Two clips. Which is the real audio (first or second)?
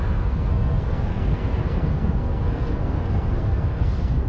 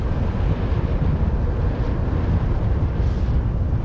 second